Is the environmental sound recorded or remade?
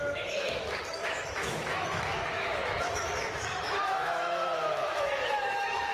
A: remade